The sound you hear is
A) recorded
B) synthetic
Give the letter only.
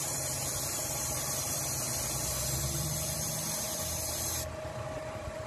A